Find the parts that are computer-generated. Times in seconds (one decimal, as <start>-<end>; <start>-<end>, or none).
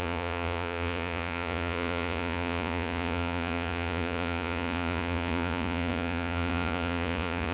0.0-7.5